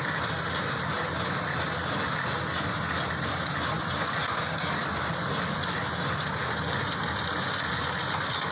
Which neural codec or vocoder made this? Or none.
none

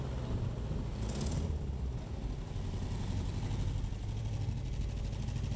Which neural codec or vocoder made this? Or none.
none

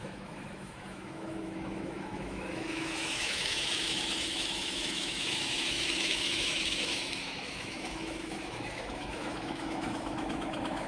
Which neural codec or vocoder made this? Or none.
autoencoder, DAC-VAE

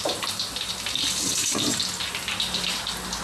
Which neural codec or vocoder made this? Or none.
none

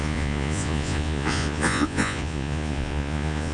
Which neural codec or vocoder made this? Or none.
vocoder, Vocos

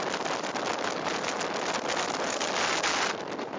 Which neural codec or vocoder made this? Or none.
none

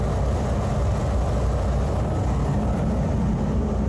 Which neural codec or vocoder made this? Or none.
none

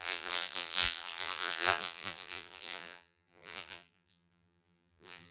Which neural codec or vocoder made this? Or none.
vocoder, BigVGAN v2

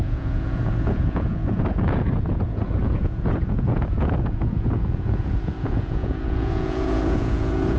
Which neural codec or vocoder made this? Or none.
vocoder, Vocos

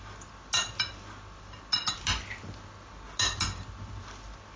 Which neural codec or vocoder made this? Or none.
none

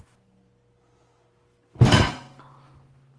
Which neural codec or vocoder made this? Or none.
none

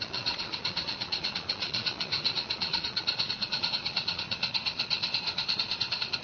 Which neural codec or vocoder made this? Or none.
vocoder, Vocos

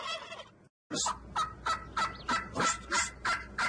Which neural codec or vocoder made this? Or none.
none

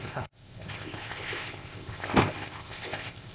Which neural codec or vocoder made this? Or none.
codec, ZipCodec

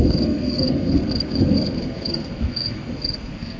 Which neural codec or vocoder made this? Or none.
codec, SNAC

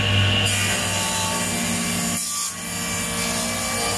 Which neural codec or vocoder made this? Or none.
none